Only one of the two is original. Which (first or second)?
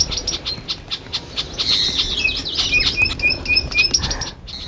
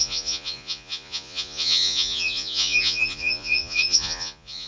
first